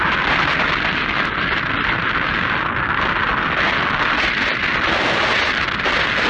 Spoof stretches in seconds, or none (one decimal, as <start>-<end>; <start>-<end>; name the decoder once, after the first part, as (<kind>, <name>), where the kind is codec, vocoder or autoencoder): none